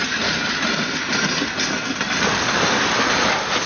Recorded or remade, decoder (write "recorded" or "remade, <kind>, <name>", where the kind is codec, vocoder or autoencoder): recorded